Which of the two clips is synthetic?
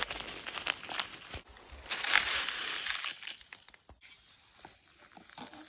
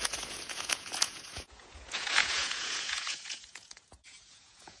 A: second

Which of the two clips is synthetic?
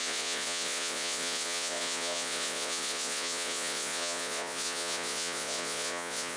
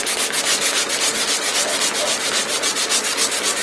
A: first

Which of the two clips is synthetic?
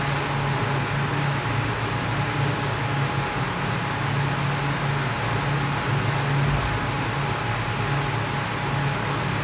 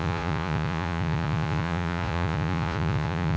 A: second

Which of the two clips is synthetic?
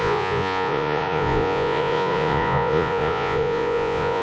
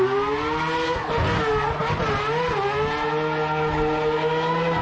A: first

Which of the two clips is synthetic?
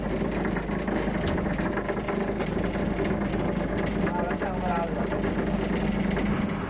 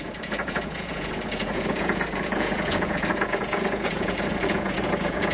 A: second